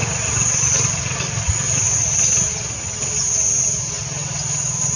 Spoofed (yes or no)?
no